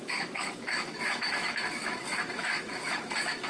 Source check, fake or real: fake